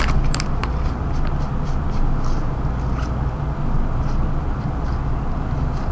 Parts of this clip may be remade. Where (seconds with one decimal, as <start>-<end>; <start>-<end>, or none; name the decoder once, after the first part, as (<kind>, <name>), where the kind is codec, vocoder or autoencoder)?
none